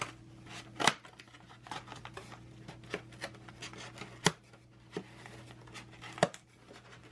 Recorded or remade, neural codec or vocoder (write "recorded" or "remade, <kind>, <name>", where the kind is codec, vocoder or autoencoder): recorded